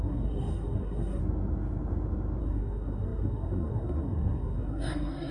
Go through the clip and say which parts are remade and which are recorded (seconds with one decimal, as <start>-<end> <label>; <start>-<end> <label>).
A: 0.0-1.2 remade; 1.2-2.4 recorded; 2.4-5.3 remade